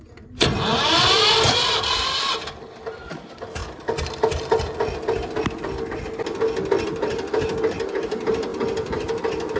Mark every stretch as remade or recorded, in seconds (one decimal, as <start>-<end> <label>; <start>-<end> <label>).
0.0-0.7 recorded; 0.7-3.1 remade; 3.1-9.6 recorded